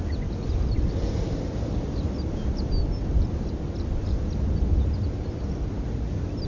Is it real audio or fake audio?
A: real